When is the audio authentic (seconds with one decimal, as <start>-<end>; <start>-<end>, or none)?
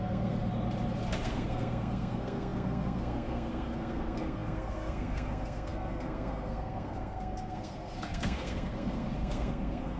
0.4-1.2